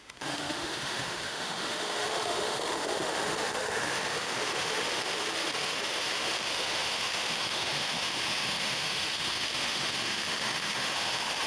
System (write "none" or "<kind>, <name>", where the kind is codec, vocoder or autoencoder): autoencoder, DAC-VAE